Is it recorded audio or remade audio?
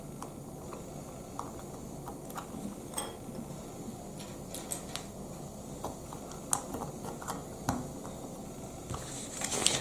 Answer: recorded